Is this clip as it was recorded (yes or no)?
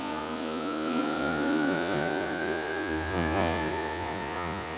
no